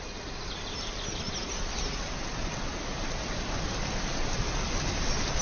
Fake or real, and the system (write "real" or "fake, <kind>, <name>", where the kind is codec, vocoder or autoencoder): real